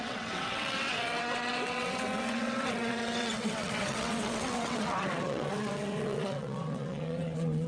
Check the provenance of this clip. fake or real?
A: fake